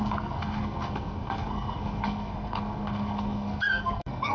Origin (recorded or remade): remade